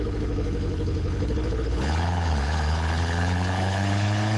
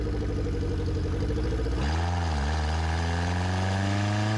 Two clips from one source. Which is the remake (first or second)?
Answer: first